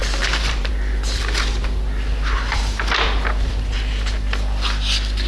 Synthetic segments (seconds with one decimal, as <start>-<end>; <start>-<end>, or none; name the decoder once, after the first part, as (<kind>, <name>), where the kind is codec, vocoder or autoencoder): 0.0-0.7 (vocoder, BigVGAN v2)